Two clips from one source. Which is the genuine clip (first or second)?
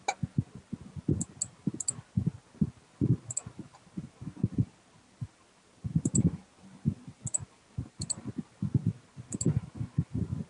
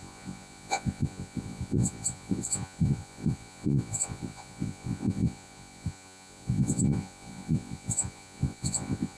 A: first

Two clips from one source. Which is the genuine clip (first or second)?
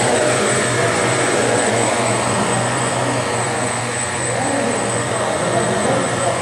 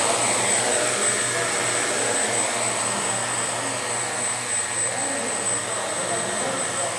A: second